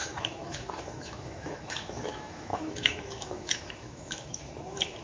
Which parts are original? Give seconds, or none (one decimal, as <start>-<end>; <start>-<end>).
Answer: none